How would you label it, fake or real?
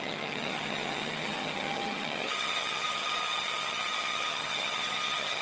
fake